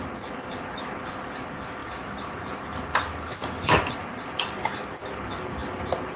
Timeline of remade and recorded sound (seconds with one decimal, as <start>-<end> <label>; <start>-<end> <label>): 0.0-1.8 recorded; 1.8-5.1 remade; 5.1-6.2 recorded